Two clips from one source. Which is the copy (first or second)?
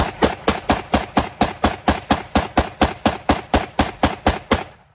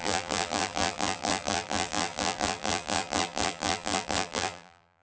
second